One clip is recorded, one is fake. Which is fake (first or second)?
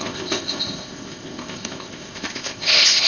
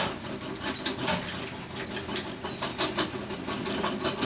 first